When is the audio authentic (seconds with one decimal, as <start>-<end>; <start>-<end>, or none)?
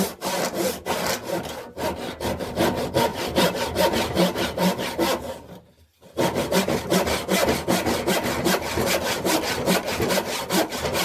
0.0-3.1; 3.8-11.0